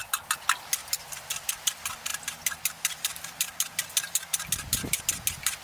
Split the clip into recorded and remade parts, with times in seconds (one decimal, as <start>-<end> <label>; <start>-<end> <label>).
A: 0.0-0.8 recorded; 0.8-1.5 remade; 1.5-2.1 recorded; 2.1-5.0 remade; 5.0-5.6 recorded